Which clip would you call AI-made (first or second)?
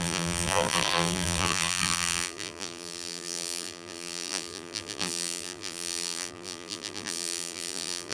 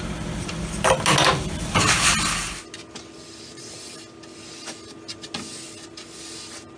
first